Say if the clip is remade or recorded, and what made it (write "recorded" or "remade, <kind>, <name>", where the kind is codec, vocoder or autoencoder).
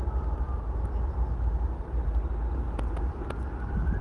recorded